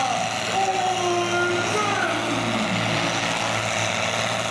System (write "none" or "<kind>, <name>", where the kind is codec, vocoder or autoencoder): none